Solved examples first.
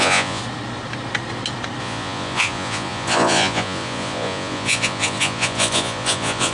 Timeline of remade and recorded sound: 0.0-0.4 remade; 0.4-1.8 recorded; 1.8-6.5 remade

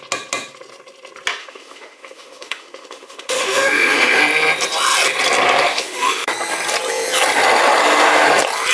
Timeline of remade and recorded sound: 0.0-1.4 recorded; 1.4-4.2 remade; 4.2-5.7 recorded; 5.7-6.3 remade; 6.3-8.7 recorded

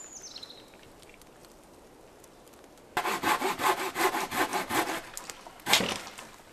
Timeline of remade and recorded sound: 0.0-6.5 recorded

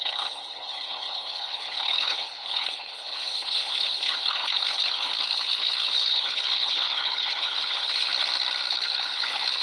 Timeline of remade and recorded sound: 0.0-8.1 remade; 8.1-8.7 recorded; 8.7-9.6 remade

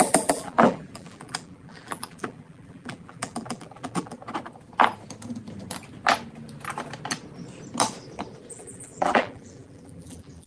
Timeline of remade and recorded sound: 0.0-4.2 remade; 4.2-8.5 recorded; 8.5-10.5 remade

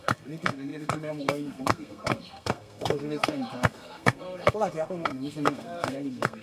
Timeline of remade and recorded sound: 0.0-6.4 remade

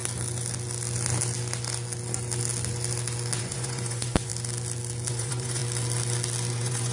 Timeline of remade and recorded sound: 0.0-3.4 recorded; 3.4-4.3 remade; 4.3-5.1 recorded; 5.1-5.6 remade; 5.6-6.5 recorded; 6.5-6.9 remade